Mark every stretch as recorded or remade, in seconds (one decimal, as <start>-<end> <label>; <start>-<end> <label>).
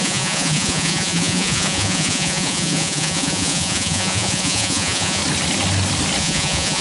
0.0-5.2 remade; 5.2-6.2 recorded; 6.2-6.8 remade